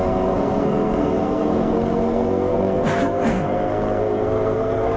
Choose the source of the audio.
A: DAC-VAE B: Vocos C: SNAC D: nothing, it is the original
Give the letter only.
C